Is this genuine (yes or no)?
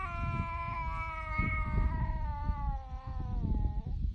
yes